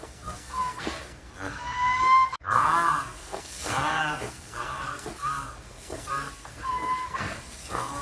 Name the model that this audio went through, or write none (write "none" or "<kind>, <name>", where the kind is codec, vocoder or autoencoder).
codec, SNAC